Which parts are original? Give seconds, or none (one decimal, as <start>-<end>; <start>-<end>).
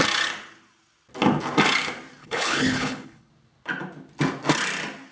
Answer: 0.0-2.2; 3.3-5.1